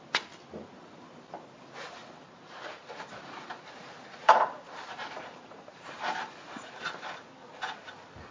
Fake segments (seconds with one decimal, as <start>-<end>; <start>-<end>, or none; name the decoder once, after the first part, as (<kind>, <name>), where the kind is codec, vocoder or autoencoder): 2.0-6.3 (vocoder, BigVGAN v2)